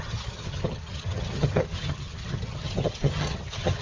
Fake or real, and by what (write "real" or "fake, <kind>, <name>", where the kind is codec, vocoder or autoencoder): fake, vocoder, HiFi-GAN